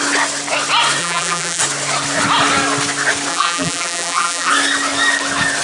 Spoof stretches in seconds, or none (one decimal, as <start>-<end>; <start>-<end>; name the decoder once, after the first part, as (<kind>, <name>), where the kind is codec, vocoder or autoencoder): 1.0-1.6 (vocoder, BigVGAN v2); 3.3-4.5